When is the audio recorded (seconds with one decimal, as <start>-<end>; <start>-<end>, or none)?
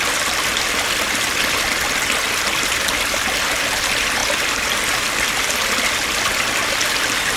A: 0.5-3.7; 4.2-6.9